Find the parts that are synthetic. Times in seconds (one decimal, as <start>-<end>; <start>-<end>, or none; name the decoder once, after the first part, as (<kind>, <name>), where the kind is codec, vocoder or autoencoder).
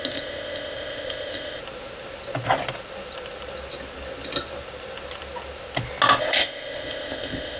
0.0-1.6 (codec, ZipCodec); 6.2-7.6